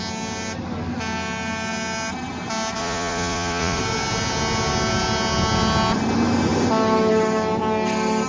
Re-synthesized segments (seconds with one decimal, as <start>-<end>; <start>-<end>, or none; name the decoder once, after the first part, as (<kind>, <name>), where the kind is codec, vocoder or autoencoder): 2.8-3.8 (vocoder, Vocos)

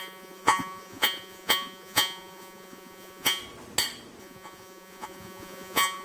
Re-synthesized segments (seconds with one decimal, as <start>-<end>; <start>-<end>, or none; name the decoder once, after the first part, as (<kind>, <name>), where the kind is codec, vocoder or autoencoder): 0.0-3.4 (vocoder, Vocos); 4.2-6.0

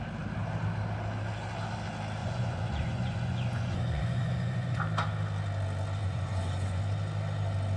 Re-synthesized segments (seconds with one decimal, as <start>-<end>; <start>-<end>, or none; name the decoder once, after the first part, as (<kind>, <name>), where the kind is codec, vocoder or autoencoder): 2.2-4.8 (vocoder, Vocos); 6.0-6.8

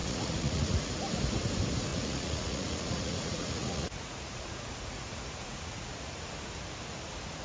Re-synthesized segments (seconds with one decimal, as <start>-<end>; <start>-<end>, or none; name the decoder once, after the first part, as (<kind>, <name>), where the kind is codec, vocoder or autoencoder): 0.0-0.9 (vocoder, Vocos); 1.9-6.3

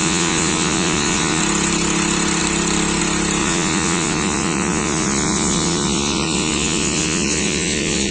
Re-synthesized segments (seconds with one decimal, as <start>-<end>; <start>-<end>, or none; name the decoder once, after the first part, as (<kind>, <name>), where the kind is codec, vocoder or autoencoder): 0.0-1.4 (vocoder, Vocos); 3.4-8.1

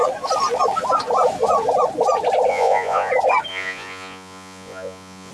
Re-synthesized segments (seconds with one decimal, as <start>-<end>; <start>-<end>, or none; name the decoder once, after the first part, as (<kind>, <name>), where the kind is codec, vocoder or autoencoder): 2.5-3.1 (vocoder, Vocos); 3.5-5.3

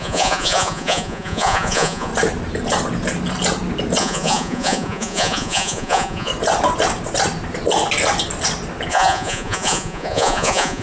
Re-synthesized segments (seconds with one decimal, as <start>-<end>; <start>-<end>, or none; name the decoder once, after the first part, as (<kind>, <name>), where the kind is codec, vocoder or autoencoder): 0.0-2.1 (vocoder, Vocos); 4.0-6.3; 8.9-10.8

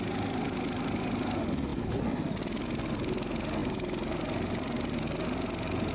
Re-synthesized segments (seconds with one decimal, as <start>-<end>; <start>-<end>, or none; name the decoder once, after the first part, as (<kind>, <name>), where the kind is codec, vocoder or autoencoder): none